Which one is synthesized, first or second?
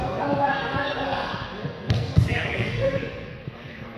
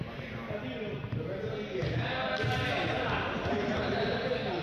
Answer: first